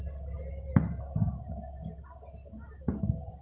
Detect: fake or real real